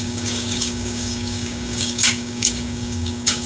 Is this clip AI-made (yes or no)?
yes